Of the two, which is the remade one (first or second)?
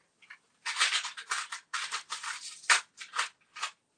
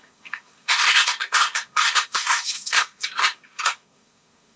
second